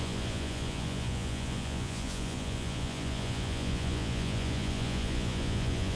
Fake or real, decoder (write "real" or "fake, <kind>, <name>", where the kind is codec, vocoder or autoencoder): fake, vocoder, Vocos